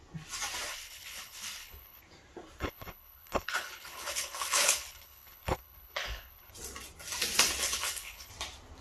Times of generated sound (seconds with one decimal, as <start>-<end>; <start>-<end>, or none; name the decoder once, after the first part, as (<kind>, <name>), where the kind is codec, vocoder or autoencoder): 0.7-2.0 (codec, HILCodec); 2.6-6.5; 7.6-8.3